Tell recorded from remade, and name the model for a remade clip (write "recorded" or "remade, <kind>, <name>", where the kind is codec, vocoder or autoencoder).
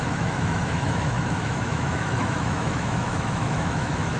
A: remade, autoencoder, DAC-VAE